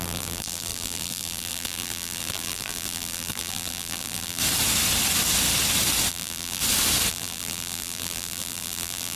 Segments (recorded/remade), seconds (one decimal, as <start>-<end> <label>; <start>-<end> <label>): 0.0-4.4 remade; 4.4-6.1 recorded; 6.1-6.6 remade; 6.6-7.1 recorded; 7.1-9.2 remade